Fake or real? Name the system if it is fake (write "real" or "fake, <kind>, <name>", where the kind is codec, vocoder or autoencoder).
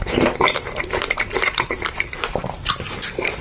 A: fake, vocoder, BigVGAN v2